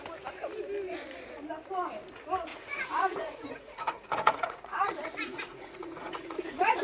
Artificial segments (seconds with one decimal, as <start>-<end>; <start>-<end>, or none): 2.5-6.8